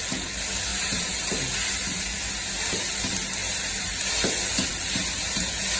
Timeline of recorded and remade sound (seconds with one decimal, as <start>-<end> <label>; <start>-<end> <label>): 0.0-0.7 recorded; 0.7-1.3 remade; 1.3-3.4 recorded; 3.4-4.1 remade; 4.1-4.7 recorded; 4.7-5.3 remade; 5.3-5.8 recorded